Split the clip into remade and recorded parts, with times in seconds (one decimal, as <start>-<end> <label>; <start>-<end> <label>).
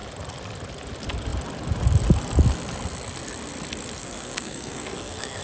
0.0-4.0 recorded; 4.0-5.4 remade